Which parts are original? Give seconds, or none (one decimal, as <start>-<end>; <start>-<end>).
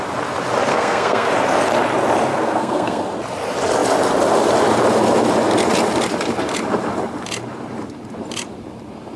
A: 0.0-0.7; 1.3-2.3; 3.0-9.2